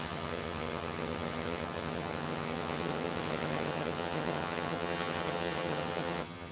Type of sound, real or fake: fake